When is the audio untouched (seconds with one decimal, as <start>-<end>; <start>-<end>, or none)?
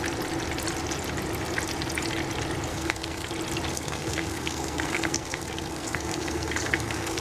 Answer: 0.0-2.7; 3.3-3.7